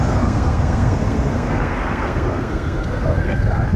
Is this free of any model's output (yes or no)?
no